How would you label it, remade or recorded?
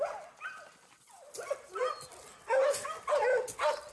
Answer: recorded